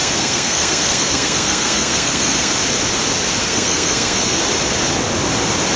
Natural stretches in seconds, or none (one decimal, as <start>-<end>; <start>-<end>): 2.5-3.4; 4.4-5.8

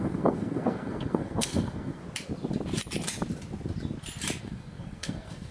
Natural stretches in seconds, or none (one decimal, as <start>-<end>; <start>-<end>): 2.0-4.4

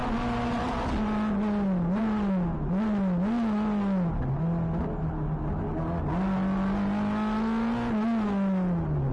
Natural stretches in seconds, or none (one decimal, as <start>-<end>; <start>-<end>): 0.0-9.1

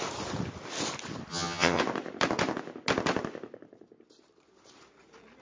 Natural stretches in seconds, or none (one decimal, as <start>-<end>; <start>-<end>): 0.0-1.3; 1.8-5.4

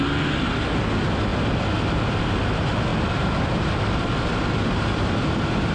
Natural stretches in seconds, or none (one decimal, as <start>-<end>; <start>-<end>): 0.0-5.7

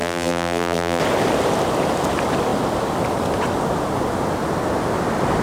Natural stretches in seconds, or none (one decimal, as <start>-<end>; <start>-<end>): 1.0-5.4